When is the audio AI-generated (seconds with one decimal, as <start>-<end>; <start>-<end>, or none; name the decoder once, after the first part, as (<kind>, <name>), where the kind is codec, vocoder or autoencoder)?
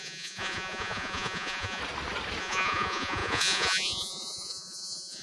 0.0-1.8 (vocoder, Vocos); 2.4-5.2